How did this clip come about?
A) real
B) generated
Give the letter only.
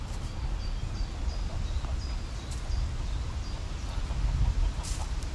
A